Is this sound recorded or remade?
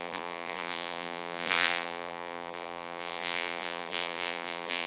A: remade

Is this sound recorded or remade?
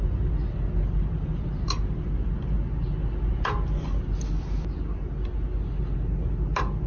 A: recorded